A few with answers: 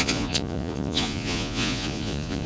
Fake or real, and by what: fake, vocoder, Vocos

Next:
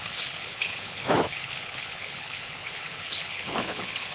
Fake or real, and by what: fake, codec, HILCodec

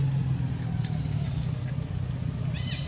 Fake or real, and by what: real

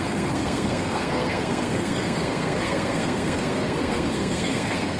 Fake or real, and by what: fake, codec, SNAC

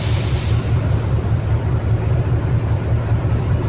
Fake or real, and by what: fake, vocoder, BigVGAN v2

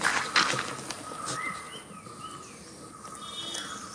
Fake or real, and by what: real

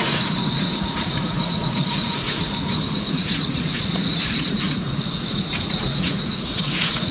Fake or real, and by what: fake, vocoder, Vocos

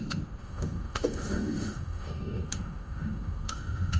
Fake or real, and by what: fake, autoencoder, DAC-VAE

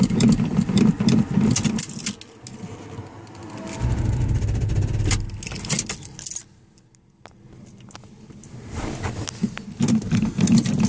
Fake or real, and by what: real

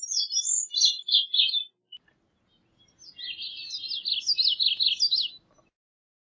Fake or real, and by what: real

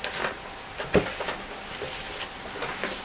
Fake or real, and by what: real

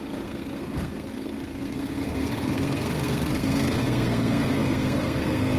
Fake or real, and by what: fake, codec, SNAC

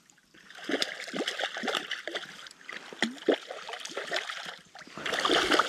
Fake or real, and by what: real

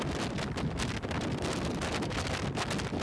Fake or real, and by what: fake, vocoder, BigVGAN v2